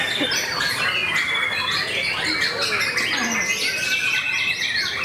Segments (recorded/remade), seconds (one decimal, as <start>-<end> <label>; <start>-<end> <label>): 0.0-5.0 recorded